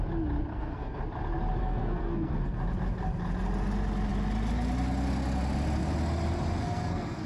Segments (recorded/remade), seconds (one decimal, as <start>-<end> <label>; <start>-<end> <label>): 0.0-0.5 recorded; 0.5-1.0 remade; 1.0-1.6 recorded; 1.6-2.6 remade; 2.6-6.6 recorded; 6.6-7.3 remade